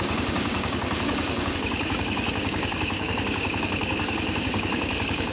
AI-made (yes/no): yes